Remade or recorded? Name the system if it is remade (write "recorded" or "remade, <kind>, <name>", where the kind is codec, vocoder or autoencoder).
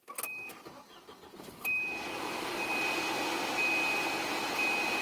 recorded